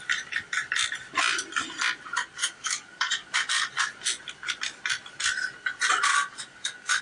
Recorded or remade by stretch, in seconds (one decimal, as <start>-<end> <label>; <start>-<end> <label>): 0.0-2.4 recorded; 2.4-3.7 remade; 3.7-6.1 recorded; 6.1-7.0 remade